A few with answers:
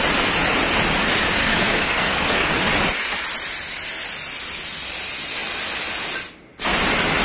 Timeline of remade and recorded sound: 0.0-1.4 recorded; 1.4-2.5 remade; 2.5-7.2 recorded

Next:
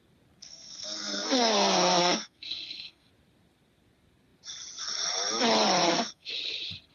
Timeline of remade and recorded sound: 0.0-0.4 recorded; 0.4-3.1 remade; 3.1-5.8 recorded; 5.8-6.3 remade; 6.3-6.9 recorded

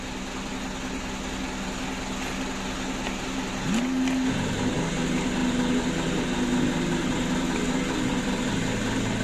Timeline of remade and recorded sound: 0.0-9.2 recorded